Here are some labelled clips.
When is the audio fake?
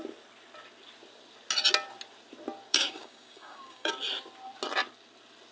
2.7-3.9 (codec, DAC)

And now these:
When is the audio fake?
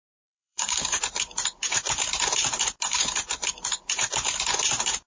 0.0-1.0 (codec, DAC)